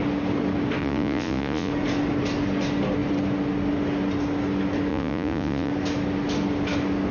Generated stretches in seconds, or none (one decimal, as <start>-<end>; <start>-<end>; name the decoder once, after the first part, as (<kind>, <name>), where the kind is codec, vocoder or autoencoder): 0.8-1.7 (vocoder, Vocos); 4.9-5.7